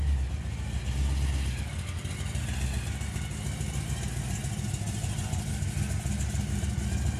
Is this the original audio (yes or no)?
yes